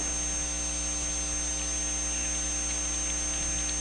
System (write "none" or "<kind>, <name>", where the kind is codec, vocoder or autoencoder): none